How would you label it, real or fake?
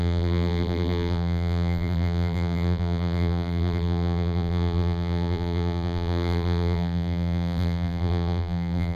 fake